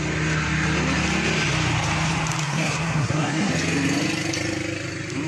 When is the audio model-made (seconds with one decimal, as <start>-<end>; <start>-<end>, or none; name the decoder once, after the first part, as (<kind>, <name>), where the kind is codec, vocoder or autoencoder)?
2.4-3.5 (codec, SNAC)